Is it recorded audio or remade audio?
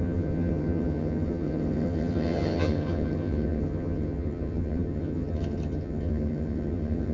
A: remade